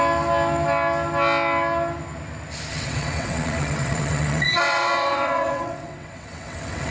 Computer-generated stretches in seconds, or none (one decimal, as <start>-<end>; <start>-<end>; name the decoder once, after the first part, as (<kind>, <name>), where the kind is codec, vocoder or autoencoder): 2.7-6.9 (vocoder, WaveNeXt)